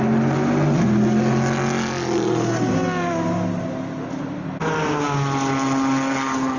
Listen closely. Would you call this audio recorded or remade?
recorded